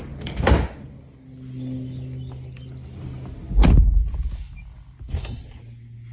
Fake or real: real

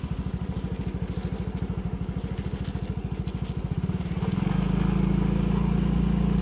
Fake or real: real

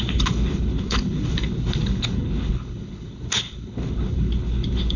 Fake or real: fake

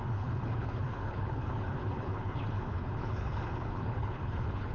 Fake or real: fake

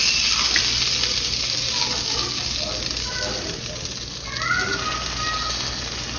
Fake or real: real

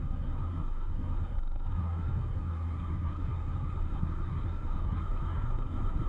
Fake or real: fake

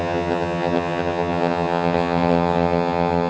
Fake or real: fake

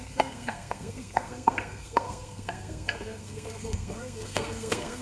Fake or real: fake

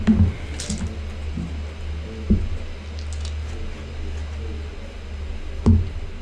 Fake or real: real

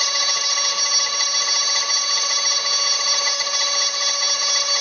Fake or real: real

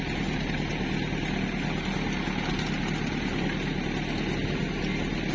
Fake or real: real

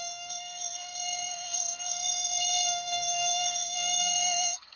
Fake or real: fake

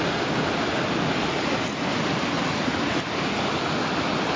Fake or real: real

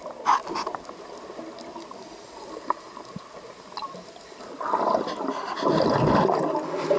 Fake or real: real